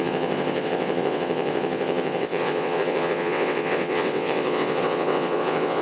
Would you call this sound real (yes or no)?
no